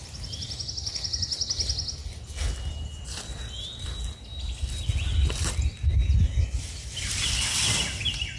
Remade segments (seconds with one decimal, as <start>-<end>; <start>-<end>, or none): none